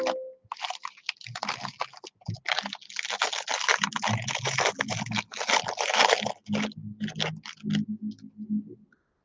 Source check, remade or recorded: recorded